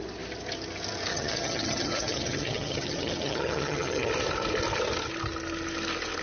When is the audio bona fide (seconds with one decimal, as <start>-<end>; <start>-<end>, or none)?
0.0-1.1; 4.1-6.2